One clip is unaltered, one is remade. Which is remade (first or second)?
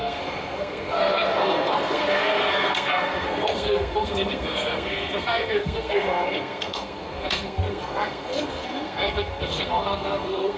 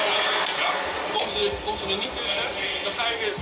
first